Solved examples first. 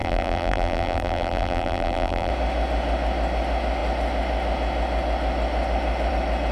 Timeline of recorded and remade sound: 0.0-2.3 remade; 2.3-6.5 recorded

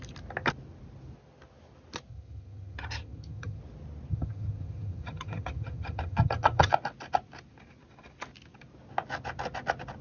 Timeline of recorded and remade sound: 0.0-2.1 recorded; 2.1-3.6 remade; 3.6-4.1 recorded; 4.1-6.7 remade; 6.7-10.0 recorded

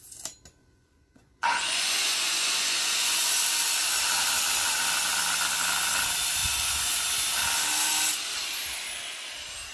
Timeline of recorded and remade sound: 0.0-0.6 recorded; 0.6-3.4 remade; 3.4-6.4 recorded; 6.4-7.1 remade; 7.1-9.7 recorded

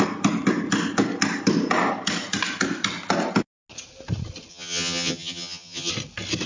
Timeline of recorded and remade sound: 0.0-4.5 recorded; 4.5-5.9 remade; 5.9-6.5 recorded

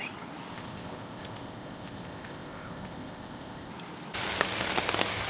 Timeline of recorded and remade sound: 0.0-0.5 recorded; 0.5-3.7 remade; 3.7-5.3 recorded

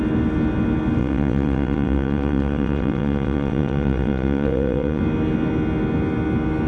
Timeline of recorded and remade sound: 0.0-1.0 recorded; 1.0-5.0 remade; 5.0-6.7 recorded

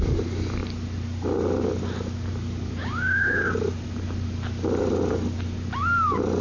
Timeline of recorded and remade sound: 0.0-2.8 recorded; 2.8-3.5 remade; 3.5-6.4 recorded